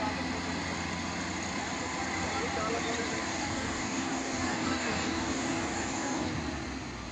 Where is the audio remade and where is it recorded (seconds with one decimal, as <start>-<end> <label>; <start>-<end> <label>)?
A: 0.0-3.3 recorded; 3.3-6.3 remade; 6.3-7.1 recorded